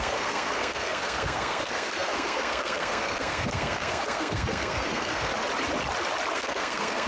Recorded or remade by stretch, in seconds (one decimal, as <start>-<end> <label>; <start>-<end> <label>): 0.0-5.3 remade; 5.3-6.3 recorded; 6.3-7.1 remade